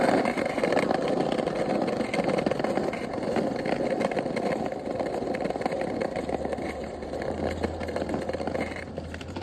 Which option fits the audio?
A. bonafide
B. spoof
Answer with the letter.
A